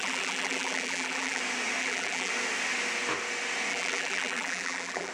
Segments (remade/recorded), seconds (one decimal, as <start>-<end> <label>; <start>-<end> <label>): 0.0-1.4 remade; 1.4-1.8 recorded; 1.8-2.3 remade; 2.3-3.7 recorded; 3.7-5.1 remade